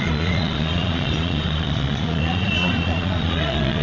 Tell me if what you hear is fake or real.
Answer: fake